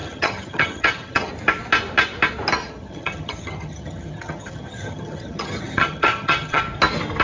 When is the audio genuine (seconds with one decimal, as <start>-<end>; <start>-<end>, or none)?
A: 1.3-2.6; 6.6-7.2